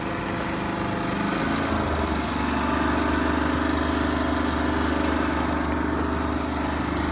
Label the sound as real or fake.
real